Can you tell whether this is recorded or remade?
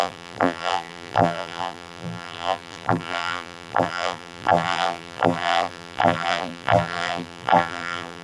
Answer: remade